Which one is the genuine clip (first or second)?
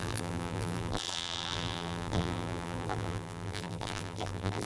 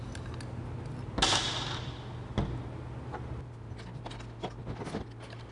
second